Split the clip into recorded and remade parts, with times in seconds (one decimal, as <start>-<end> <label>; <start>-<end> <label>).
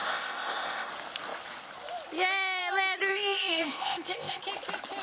0.0-0.9 remade; 0.9-3.1 recorded; 3.1-4.4 remade; 4.4-5.0 recorded